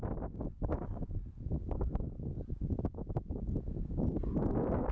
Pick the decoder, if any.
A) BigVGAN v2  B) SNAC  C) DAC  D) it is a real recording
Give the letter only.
D